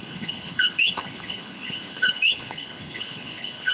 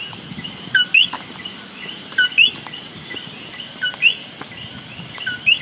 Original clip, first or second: second